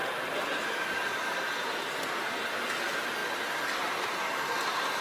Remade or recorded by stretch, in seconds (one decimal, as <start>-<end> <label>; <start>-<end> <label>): 0.0-5.0 recorded